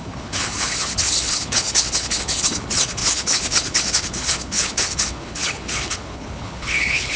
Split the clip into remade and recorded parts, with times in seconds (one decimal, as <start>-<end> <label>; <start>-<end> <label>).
0.0-7.2 remade